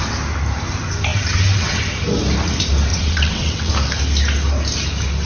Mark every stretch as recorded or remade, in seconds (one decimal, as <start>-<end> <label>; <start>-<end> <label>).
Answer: 0.0-1.1 recorded; 1.1-1.8 remade; 1.8-2.9 recorded; 2.9-3.7 remade; 3.7-5.3 recorded